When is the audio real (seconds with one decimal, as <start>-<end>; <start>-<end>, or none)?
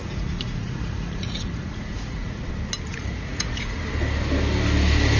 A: 2.4-2.9; 3.8-5.2